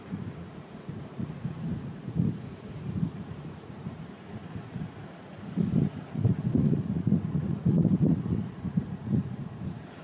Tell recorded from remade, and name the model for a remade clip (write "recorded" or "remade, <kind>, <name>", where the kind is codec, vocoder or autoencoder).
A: remade, vocoder, Vocos